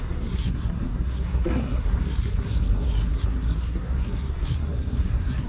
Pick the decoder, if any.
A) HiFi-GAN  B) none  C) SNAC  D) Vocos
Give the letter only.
C